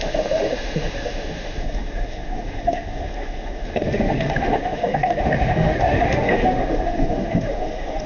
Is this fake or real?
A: fake